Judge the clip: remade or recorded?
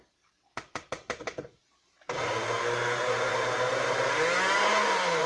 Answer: remade